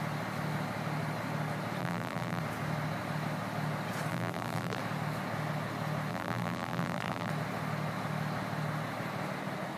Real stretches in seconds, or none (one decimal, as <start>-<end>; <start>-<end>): 0.0-1.8; 2.4-4.1; 4.8-6.1; 7.3-9.8